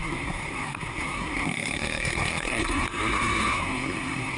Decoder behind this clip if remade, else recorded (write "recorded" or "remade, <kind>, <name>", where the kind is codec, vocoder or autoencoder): remade, codec, SNAC